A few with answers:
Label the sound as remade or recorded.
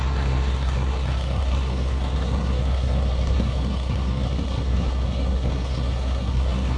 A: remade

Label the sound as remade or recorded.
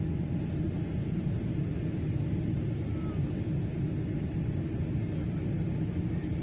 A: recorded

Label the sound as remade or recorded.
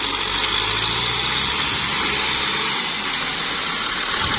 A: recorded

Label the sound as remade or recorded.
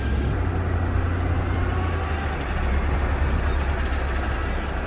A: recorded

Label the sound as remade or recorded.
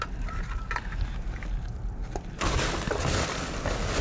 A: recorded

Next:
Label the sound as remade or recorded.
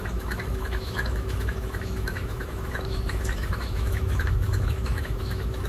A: remade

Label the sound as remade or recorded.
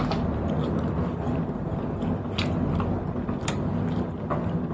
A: recorded